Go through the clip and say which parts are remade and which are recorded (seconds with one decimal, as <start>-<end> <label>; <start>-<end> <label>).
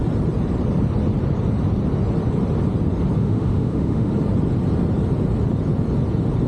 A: 0.0-3.2 recorded; 3.2-4.1 remade; 4.1-6.5 recorded